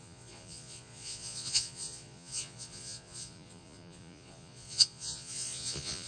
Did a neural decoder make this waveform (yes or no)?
yes